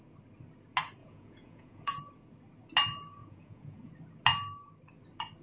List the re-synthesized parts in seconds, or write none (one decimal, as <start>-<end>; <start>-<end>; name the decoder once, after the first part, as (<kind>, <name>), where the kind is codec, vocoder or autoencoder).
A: 1.0-2.0 (vocoder, Vocos); 3.2-3.9